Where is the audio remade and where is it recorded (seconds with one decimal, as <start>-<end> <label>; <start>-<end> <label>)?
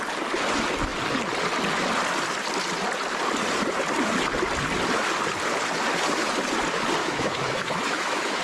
0.0-7.0 recorded; 7.0-8.4 remade